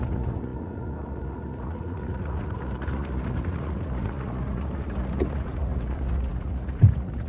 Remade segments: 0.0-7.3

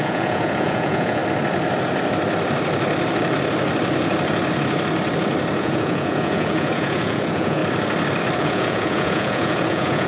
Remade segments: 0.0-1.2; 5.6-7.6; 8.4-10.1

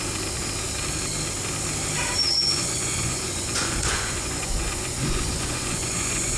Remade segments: 2.3-6.4

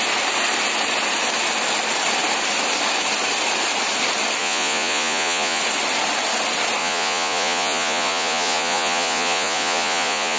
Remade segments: 4.4-5.6; 6.8-10.4

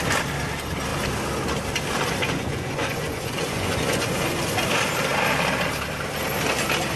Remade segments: 2.2-4.4